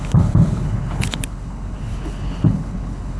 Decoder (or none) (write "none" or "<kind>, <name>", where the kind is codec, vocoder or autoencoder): codec, HILCodec